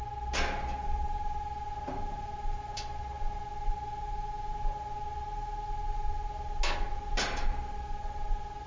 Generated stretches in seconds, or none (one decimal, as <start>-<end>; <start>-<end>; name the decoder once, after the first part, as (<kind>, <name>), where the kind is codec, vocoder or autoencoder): none